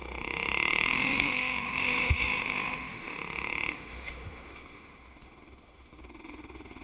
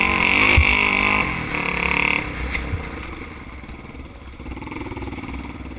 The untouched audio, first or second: second